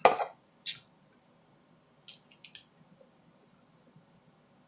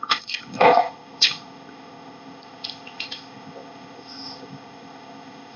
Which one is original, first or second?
first